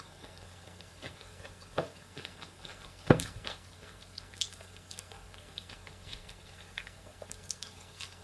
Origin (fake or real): fake